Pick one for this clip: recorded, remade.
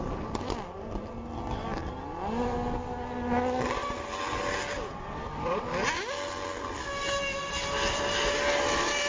recorded